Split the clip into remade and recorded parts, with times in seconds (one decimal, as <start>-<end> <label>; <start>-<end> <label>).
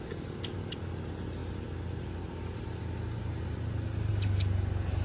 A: 0.0-5.0 recorded